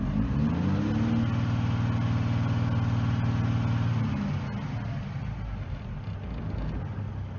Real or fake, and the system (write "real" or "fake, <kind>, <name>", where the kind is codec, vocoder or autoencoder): real